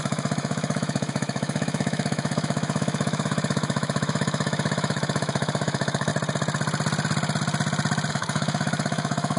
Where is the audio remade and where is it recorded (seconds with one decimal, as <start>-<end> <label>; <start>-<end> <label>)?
0.0-6.1 remade; 6.1-8.1 recorded; 8.1-9.4 remade